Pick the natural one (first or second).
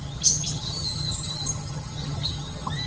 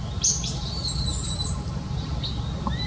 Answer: second